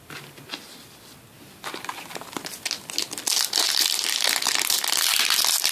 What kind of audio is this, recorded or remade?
recorded